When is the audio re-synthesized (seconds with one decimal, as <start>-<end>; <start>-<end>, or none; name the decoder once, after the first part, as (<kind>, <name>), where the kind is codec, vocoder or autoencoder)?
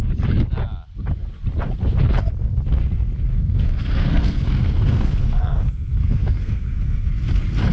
3.3-7.1 (codec, SNAC)